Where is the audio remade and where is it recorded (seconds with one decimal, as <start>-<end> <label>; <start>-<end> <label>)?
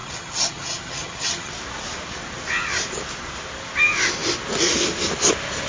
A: 0.0-1.5 remade; 1.5-5.7 recorded